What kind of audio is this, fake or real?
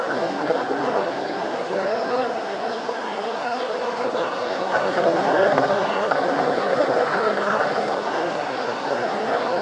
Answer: fake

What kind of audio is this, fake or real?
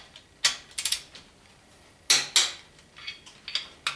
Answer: real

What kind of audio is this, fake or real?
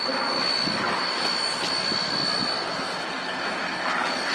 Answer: real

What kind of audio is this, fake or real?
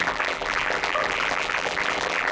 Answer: fake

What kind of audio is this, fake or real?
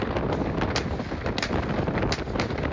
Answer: real